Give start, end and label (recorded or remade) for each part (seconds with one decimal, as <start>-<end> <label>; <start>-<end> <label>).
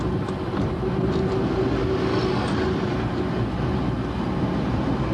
0.0-5.1 recorded